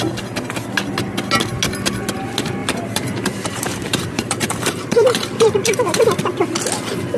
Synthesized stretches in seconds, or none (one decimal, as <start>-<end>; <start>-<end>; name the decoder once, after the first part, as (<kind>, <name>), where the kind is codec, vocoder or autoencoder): 2.6-6.2 (vocoder, BigVGAN v2)